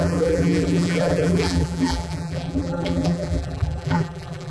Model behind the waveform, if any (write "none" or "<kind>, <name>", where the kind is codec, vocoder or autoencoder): vocoder, BigVGAN v2